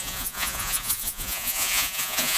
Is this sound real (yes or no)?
no